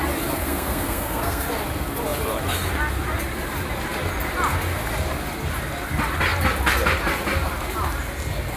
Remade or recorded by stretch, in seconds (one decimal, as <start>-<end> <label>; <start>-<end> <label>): 0.0-0.4 recorded; 0.4-1.5 remade; 1.5-8.6 recorded